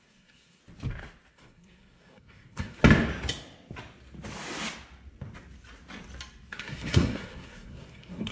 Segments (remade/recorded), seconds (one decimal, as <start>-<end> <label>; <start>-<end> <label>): 0.0-0.6 remade; 0.6-1.3 recorded; 1.3-2.8 remade; 2.8-6.5 recorded; 6.5-8.3 remade